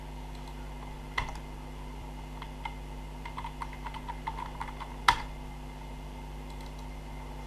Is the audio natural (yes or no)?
yes